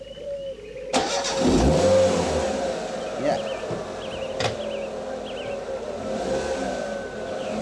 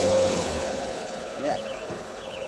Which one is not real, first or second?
second